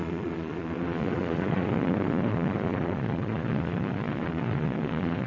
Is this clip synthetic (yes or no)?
yes